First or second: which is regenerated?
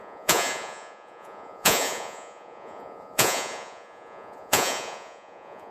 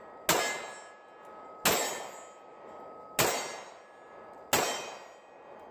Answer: first